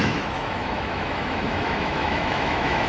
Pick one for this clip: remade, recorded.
remade